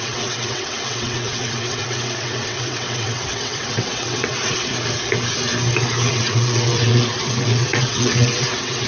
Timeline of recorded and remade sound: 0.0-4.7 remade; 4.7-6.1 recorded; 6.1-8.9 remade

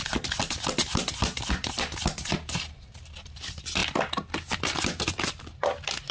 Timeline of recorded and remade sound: 0.0-6.1 recorded

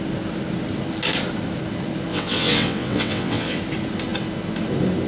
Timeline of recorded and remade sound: 0.0-2.1 recorded; 2.1-3.6 remade; 3.6-5.1 recorded

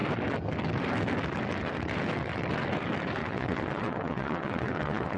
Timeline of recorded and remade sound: 0.0-3.2 recorded; 3.2-5.2 remade

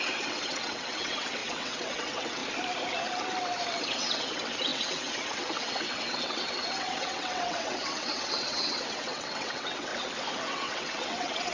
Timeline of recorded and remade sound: 0.0-2.4 remade; 2.4-3.8 recorded; 3.8-9.9 remade; 9.9-10.4 recorded; 10.4-11.5 remade

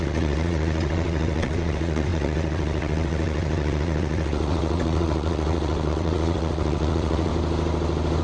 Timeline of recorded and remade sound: 0.0-7.3 remade; 7.3-8.2 recorded

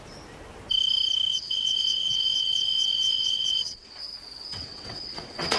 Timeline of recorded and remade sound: 0.0-1.3 recorded; 1.3-4.0 remade; 4.0-4.5 recorded; 4.5-5.6 remade

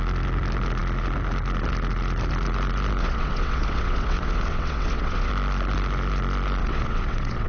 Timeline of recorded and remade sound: 0.0-3.0 recorded; 3.0-5.3 remade; 5.3-6.6 recorded; 6.6-7.5 remade